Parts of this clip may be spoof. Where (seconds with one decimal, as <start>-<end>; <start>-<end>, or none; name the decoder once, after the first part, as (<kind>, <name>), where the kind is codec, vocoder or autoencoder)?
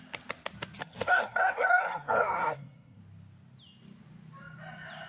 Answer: 0.8-3.0 (codec, SNAC)